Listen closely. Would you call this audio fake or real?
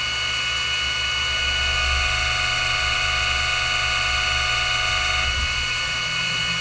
real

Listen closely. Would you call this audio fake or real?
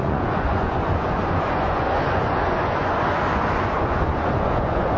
fake